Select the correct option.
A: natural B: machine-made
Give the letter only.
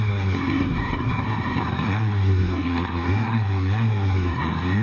B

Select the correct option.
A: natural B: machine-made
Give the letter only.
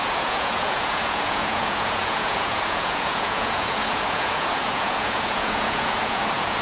B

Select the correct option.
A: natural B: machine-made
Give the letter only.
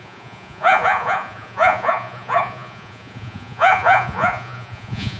B